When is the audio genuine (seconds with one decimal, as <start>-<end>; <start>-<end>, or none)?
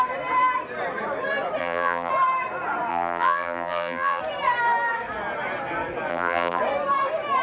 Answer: 0.0-1.6; 2.1-2.9; 4.2-6.1; 6.6-7.4